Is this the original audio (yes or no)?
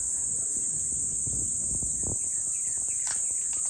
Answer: yes